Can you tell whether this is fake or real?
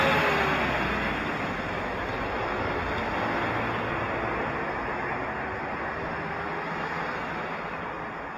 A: real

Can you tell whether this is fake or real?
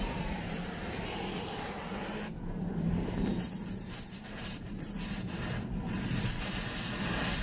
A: fake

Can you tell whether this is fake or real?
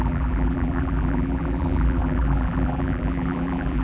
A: fake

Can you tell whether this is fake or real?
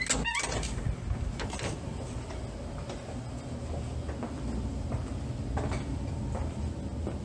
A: real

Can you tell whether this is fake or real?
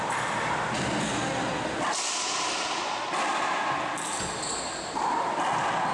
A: real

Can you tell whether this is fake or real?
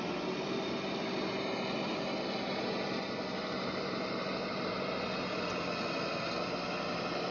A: real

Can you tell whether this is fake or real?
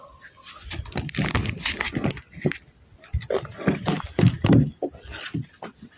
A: real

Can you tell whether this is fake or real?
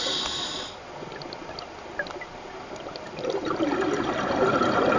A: real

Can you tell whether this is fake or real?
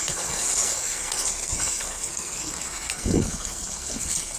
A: fake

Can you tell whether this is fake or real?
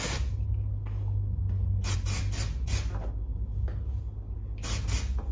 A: real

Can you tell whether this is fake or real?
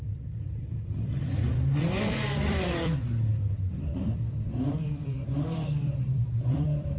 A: fake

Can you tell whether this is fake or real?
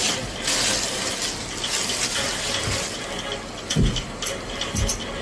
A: real